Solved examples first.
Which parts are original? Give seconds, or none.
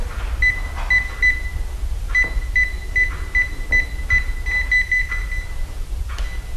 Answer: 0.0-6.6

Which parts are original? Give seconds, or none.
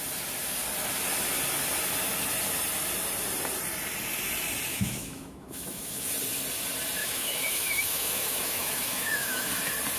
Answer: 0.0-4.7; 6.1-7.0; 9.5-10.0